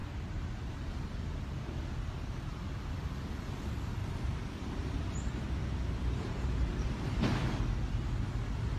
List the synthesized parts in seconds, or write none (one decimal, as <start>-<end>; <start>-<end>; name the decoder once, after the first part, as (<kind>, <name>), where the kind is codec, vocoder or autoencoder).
0.0-1.0 (vocoder, BigVGAN v2); 4.0-7.6